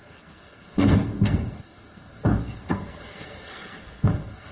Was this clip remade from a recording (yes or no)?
yes